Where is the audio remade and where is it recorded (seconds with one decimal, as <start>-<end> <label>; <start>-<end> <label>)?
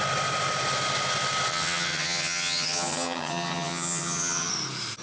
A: 0.0-1.5 recorded; 1.5-4.5 remade; 4.5-5.0 recorded